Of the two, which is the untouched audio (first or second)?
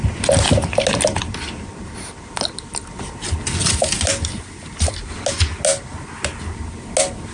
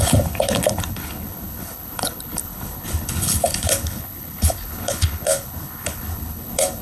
first